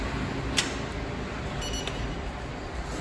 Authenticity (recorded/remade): recorded